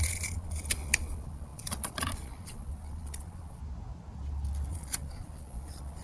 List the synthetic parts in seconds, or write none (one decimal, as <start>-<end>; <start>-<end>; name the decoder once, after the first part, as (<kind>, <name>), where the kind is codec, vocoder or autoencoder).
0.0-3.6 (vocoder, Vocos); 4.7-6.0